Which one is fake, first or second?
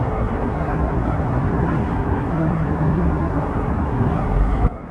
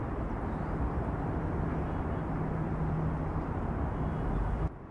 first